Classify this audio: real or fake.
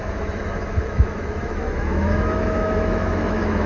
fake